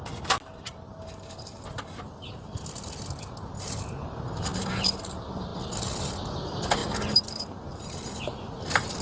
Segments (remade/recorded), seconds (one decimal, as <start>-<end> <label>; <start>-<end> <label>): 0.0-9.0 recorded